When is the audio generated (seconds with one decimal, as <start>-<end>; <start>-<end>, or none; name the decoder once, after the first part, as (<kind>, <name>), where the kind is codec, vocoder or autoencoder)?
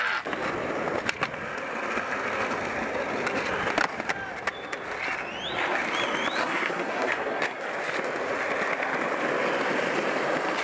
6.4-7.7 (codec, SNAC)